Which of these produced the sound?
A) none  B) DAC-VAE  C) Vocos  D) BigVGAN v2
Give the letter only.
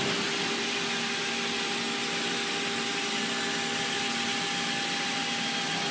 A